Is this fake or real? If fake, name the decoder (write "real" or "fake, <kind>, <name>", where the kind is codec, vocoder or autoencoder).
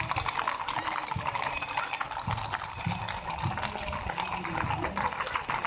real